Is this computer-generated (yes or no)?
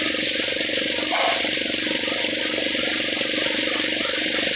no